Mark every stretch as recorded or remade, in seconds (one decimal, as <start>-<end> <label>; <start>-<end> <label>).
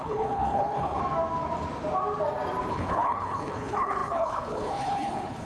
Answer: 0.0-1.0 remade; 1.0-2.7 recorded; 2.7-5.5 remade